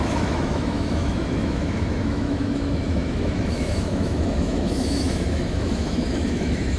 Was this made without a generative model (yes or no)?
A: no